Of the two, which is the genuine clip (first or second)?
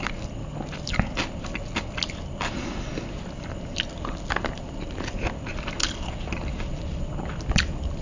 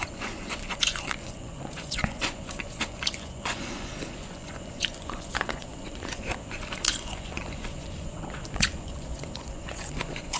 first